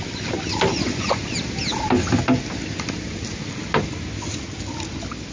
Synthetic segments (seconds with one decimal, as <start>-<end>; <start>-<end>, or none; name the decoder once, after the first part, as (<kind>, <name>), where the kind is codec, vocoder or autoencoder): 0.7-1.2 (vocoder, Vocos)